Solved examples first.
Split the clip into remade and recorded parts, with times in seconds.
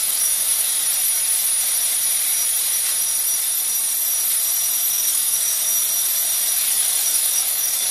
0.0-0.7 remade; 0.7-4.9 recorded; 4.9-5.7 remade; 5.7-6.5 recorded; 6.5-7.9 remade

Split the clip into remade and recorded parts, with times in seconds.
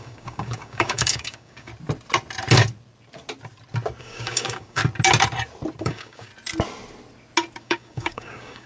0.0-1.7 remade; 1.7-4.0 recorded; 4.0-4.8 remade; 4.8-5.8 recorded; 5.8-6.3 remade; 6.3-7.6 recorded; 7.6-8.7 remade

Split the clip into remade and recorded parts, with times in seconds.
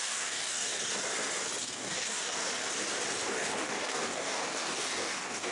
0.0-0.9 remade; 0.9-1.6 recorded; 1.6-2.4 remade; 2.4-3.3 recorded; 3.3-5.5 remade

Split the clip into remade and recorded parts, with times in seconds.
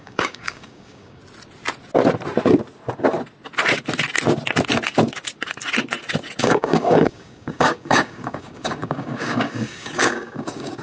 0.0-1.2 remade; 1.2-6.4 recorded; 6.4-10.8 remade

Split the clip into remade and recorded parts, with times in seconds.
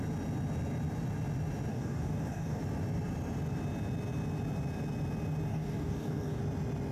0.0-1.7 recorded; 1.7-2.6 remade; 2.6-5.5 recorded; 5.5-6.4 remade; 6.4-6.9 recorded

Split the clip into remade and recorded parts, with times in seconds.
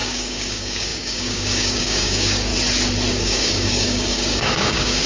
0.0-2.5 remade; 2.5-3.1 recorded; 3.1-5.1 remade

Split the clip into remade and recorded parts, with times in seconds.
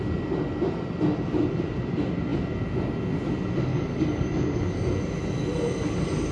0.0-3.7 recorded; 3.7-4.8 remade; 4.8-6.3 recorded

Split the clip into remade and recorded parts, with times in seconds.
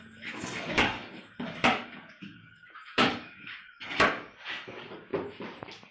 0.0-5.1 remade; 5.1-5.9 recorded